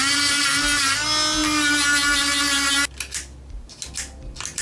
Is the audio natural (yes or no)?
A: yes